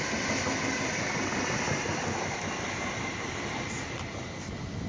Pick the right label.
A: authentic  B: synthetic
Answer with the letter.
A